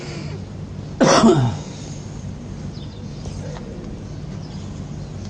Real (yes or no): yes